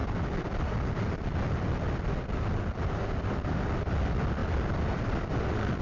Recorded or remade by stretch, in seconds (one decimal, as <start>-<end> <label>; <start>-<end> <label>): 0.0-5.8 recorded